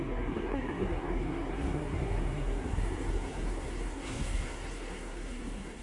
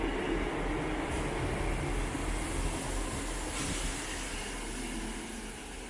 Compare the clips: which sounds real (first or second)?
second